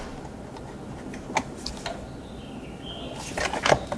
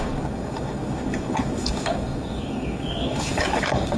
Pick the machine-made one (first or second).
second